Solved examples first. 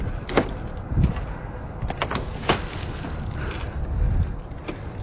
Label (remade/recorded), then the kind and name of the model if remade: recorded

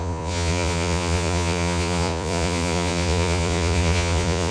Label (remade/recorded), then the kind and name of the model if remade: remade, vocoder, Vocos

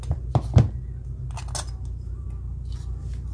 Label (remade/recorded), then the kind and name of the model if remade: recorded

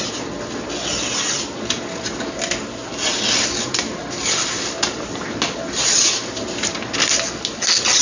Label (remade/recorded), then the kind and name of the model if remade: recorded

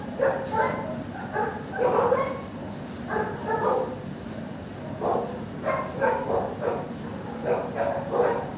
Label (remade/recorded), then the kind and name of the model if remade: recorded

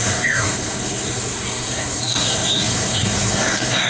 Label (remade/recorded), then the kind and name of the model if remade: remade, codec, SNAC